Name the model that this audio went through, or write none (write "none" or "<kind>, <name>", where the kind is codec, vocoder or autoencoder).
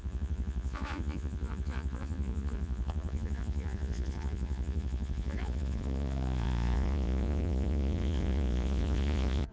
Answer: vocoder, Vocos